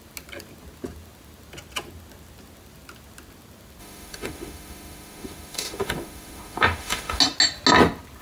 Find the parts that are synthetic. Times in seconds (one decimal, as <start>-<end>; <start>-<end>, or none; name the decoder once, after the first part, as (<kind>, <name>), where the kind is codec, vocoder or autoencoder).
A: 3.8-7.2 (autoencoder, DAC-VAE)